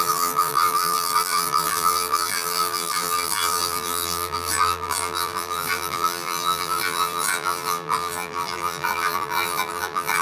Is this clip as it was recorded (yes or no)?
no